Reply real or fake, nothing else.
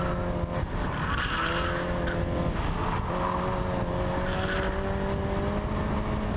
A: real